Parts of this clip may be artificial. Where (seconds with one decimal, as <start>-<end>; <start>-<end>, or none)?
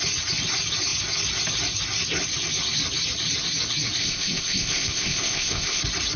4.0-5.8